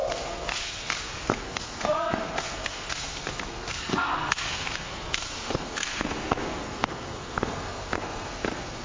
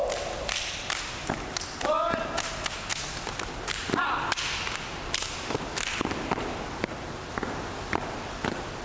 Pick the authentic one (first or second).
second